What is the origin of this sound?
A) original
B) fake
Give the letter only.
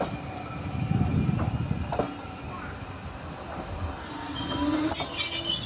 A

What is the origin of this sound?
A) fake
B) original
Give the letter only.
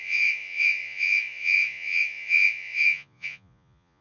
A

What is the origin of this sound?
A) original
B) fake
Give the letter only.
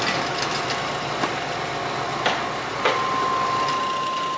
A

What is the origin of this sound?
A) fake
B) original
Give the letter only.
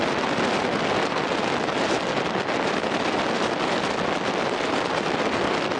B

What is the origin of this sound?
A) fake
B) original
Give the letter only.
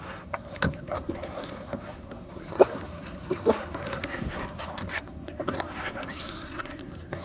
A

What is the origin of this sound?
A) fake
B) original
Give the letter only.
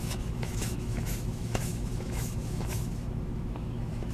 A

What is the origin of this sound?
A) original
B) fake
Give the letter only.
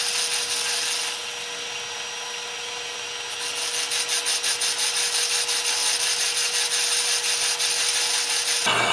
A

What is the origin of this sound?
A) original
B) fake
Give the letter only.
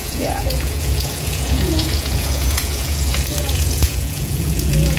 B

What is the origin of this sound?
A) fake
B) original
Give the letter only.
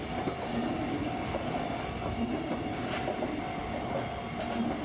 B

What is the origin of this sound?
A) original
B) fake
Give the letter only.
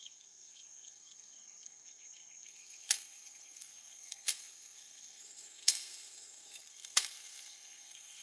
B